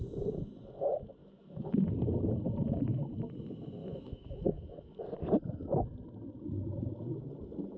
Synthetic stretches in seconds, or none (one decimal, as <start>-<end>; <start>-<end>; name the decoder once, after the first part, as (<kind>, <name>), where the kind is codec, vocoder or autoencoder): 1.2-1.8 (autoencoder, DAC-VAE); 3.8-5.0